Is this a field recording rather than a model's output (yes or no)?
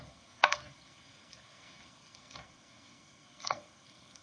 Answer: no